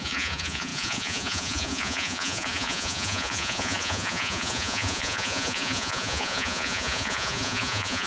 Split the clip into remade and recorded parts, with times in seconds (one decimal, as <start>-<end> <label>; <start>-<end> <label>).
0.0-8.1 remade